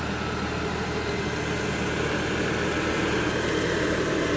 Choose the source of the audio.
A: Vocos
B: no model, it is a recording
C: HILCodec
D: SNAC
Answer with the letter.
B